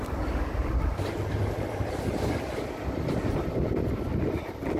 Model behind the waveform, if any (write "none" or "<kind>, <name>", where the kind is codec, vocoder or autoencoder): vocoder, BigVGAN v2